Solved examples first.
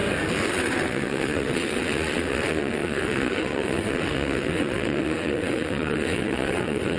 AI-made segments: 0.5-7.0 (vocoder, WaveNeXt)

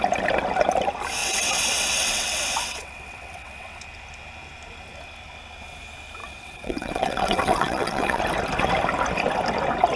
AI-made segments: 1.2-3.8 (vocoder, WaveNeXt); 6.2-8.2